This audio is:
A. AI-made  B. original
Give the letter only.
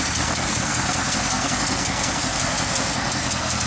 A